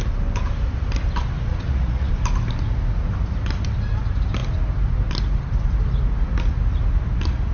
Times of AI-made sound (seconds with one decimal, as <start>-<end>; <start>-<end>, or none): 1.5-2.1